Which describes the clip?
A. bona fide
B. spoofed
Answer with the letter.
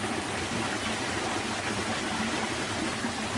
A